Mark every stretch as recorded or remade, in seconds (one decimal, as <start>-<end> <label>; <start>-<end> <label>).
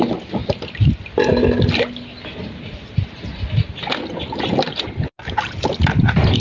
0.0-6.4 recorded